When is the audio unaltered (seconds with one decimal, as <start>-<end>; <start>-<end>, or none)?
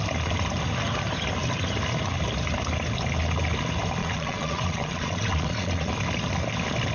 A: 0.0-4.0; 5.9-6.9